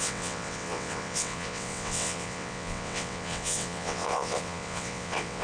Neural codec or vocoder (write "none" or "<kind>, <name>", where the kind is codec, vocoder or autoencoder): vocoder, WaveNeXt